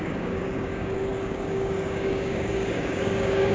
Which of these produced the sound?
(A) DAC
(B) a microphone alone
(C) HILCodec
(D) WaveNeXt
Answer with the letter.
A